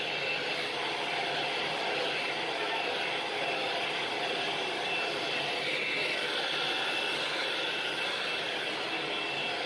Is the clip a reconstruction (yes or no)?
no